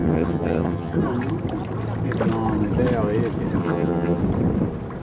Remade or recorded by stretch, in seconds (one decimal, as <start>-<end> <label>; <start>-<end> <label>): 0.0-1.0 remade; 1.0-3.6 recorded; 3.6-4.2 remade; 4.2-5.0 recorded